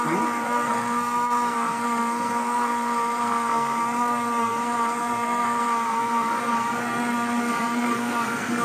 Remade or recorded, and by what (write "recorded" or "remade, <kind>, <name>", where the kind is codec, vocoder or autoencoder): remade, codec, SNAC